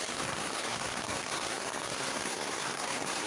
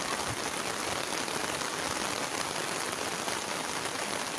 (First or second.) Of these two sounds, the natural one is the second